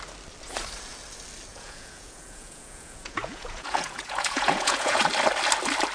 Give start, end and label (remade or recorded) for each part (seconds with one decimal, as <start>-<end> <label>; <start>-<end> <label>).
0.0-1.5 recorded; 1.5-5.0 remade; 5.0-5.9 recorded